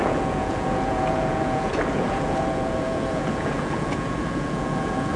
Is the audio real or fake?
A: fake